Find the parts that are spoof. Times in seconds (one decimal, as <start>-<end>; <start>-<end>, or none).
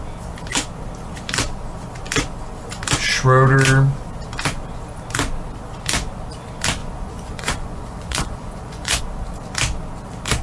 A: 6.8-9.0